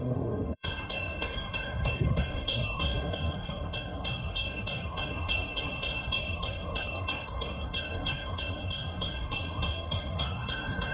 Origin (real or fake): fake